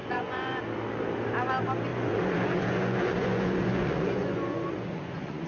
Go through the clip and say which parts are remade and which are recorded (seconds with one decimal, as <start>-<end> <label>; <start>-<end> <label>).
0.0-0.6 remade; 0.6-1.9 recorded; 1.9-5.5 remade